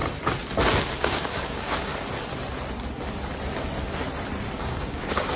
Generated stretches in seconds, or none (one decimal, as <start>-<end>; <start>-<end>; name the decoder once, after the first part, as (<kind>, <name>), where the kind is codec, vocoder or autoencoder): 0.8-1.9 (codec, DAC); 4.6-5.4